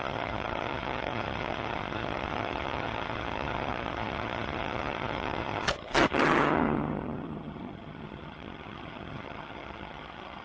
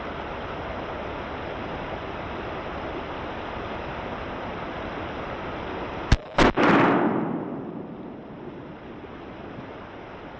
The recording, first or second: second